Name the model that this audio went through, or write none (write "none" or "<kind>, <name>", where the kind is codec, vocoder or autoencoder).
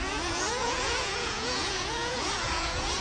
vocoder, Vocos